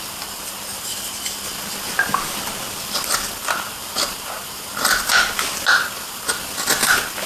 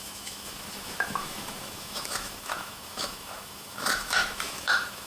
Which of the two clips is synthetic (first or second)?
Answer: second